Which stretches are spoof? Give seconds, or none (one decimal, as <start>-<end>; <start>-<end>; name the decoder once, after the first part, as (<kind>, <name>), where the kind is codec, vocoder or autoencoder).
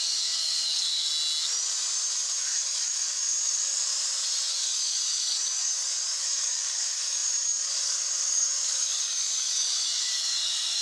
0.0-1.1 (codec, DAC); 2.4-3.9; 4.5-10.8